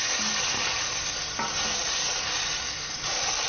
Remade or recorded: recorded